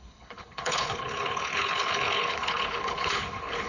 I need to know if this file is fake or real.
fake